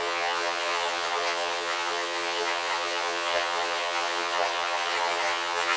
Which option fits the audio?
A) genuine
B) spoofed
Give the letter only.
B